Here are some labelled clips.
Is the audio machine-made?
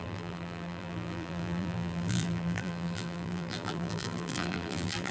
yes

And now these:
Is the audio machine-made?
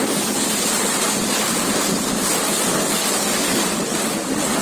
no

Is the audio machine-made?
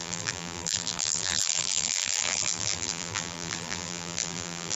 yes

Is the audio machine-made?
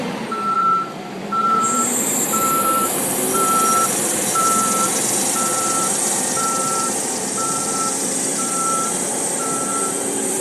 yes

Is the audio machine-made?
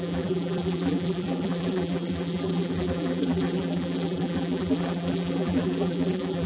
yes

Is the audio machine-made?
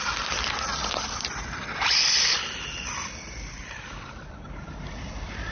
yes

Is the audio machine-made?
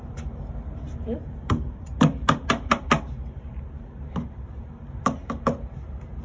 yes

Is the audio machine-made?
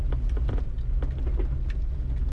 no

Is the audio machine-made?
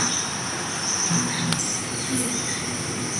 yes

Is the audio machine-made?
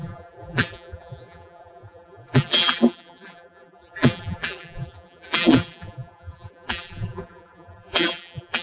yes